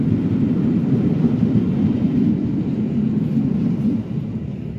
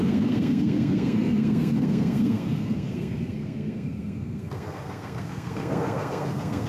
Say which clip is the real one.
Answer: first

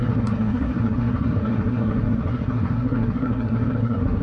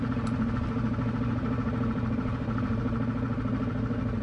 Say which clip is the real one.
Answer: second